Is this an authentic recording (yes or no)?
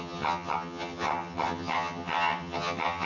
no